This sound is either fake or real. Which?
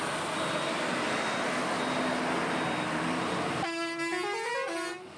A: real